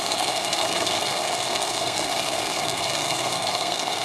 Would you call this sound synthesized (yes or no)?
yes